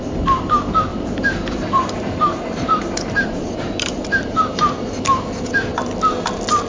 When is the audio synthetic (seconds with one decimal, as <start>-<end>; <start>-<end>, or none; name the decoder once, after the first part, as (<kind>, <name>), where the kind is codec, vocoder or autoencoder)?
0.9-4.9 (vocoder, BigVGAN v2)